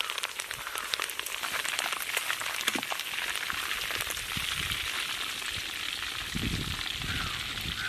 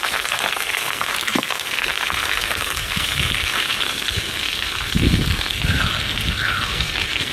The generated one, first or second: second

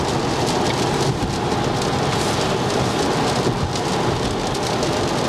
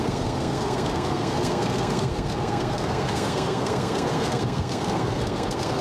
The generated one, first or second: second